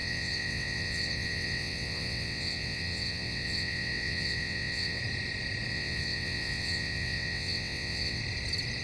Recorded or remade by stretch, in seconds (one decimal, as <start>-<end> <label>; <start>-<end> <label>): 0.0-5.0 remade; 5.0-5.7 recorded; 5.7-8.2 remade; 8.2-8.8 recorded